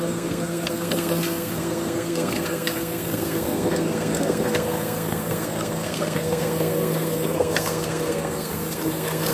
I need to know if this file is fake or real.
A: fake